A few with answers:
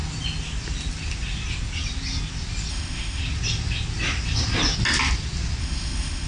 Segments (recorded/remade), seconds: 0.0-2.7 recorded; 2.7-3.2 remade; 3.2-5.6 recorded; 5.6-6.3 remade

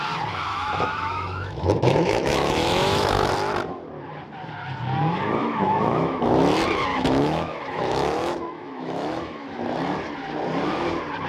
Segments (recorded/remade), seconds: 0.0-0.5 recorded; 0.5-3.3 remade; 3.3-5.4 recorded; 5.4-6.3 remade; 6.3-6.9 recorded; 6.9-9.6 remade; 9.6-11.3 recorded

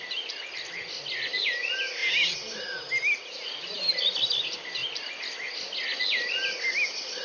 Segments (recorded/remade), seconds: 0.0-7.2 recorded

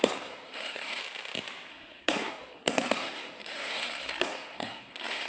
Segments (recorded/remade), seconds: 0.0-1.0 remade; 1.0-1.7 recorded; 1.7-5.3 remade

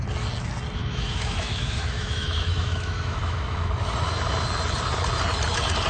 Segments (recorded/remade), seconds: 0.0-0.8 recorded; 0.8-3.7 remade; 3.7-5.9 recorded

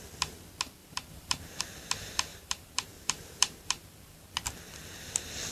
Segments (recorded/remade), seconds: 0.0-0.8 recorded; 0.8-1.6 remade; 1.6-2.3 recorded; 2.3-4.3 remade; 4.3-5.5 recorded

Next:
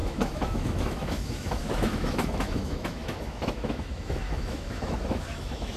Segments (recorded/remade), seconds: 0.0-5.8 remade

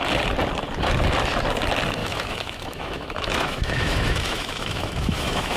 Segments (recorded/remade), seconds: 0.0-2.0 recorded; 2.0-5.6 remade